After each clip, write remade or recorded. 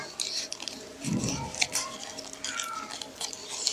remade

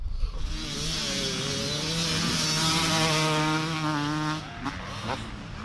recorded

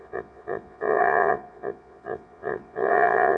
remade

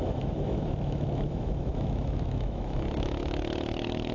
remade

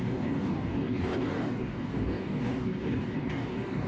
remade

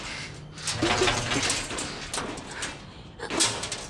recorded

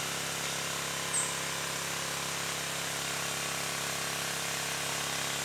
recorded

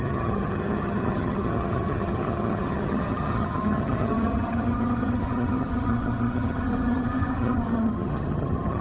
remade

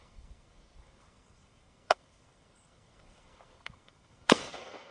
remade